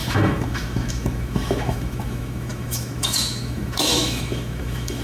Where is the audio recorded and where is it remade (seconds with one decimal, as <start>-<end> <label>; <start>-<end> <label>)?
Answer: 0.0-5.0 remade